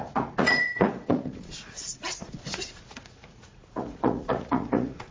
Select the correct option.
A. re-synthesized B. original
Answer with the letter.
A